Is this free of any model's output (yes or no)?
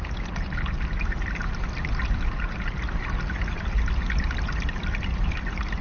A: yes